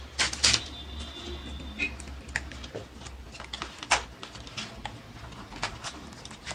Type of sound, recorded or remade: recorded